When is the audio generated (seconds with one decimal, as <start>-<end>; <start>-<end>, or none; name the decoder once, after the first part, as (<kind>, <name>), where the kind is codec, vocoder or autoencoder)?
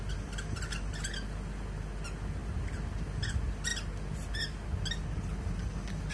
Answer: none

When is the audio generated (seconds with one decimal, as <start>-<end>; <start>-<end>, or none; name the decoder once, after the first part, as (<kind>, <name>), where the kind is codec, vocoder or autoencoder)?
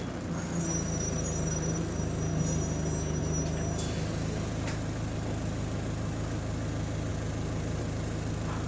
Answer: none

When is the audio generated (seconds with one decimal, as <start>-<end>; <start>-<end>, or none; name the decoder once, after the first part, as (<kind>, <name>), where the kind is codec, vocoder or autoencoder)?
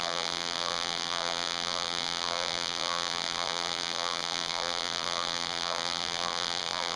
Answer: 0.0-7.0 (vocoder, BigVGAN v2)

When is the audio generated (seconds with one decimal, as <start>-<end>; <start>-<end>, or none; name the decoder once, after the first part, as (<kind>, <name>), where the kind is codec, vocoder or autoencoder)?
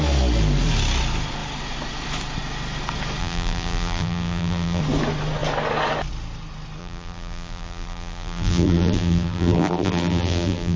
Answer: 3.2-4.8 (vocoder, BigVGAN v2); 6.8-10.8